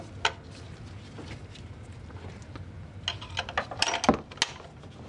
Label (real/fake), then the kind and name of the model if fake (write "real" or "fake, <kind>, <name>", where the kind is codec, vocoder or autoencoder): real